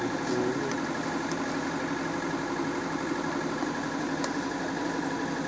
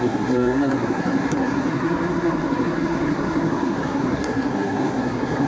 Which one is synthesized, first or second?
second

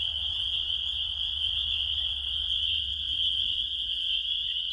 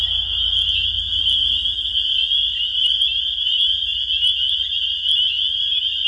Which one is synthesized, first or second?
first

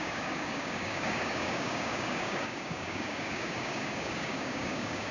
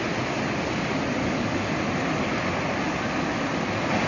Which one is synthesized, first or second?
first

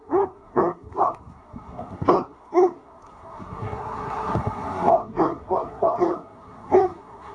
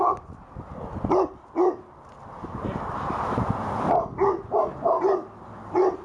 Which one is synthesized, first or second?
first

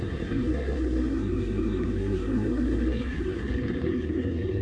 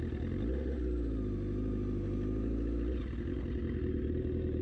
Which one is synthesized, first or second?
first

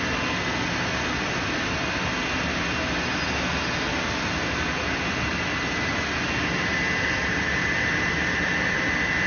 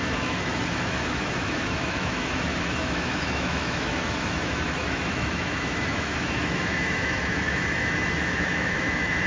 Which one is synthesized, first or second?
second